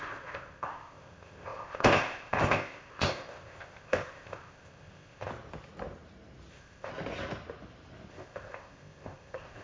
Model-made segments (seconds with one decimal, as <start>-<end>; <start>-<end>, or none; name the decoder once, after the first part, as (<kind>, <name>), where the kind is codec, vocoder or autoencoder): 0.0-5.3 (codec, ZipCodec); 6.5-6.9; 8.1-9.6